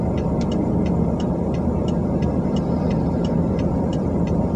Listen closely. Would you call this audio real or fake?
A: fake